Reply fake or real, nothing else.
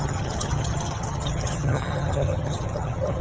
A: fake